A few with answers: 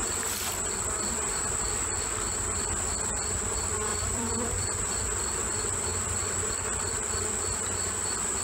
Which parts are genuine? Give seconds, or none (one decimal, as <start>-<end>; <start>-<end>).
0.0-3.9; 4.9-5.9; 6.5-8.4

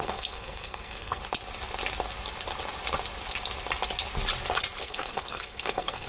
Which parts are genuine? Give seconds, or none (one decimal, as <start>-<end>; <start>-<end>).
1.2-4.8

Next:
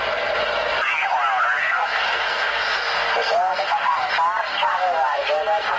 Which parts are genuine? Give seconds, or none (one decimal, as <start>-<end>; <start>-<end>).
0.0-1.6; 4.1-4.5

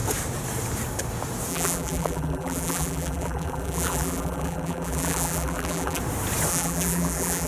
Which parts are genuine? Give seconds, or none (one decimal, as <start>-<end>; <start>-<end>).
0.0-1.5; 6.0-6.5